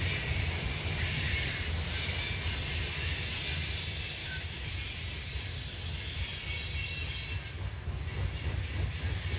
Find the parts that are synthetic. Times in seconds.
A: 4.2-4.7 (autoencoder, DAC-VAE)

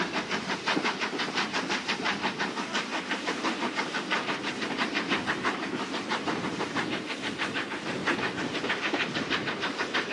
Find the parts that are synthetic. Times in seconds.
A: 0.0-8.0 (vocoder, BigVGAN v2); 8.7-10.1

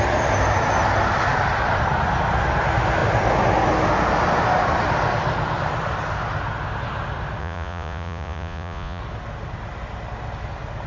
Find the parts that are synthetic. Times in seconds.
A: 7.4-9.0 (vocoder, Vocos)

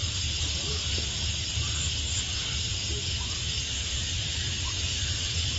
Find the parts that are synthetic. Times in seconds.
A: none